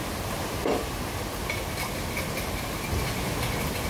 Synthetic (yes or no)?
no